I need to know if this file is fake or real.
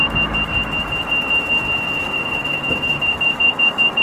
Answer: fake